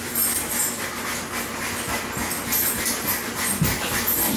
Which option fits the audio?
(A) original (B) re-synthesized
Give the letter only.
A